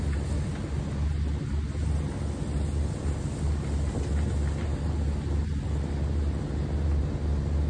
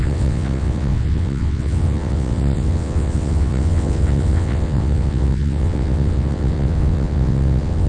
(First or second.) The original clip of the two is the first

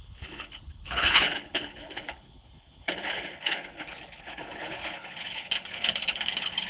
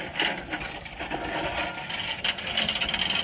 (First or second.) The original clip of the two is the second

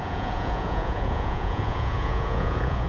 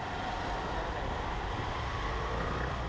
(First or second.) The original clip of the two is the second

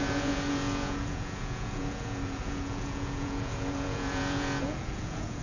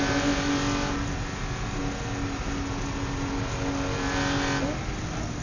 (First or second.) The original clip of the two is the second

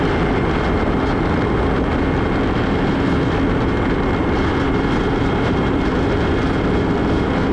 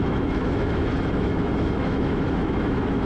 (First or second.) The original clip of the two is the first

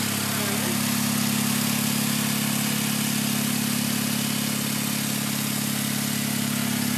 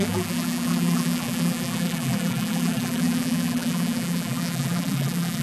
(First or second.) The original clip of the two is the first